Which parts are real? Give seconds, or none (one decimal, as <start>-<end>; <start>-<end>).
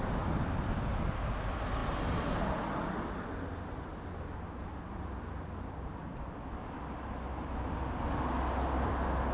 0.0-9.3